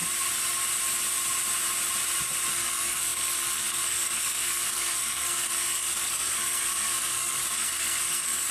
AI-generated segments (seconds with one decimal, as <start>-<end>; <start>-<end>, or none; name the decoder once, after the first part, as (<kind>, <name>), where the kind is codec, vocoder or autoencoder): 2.5-8.5 (codec, SNAC)